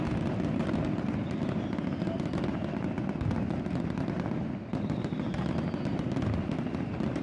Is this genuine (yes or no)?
yes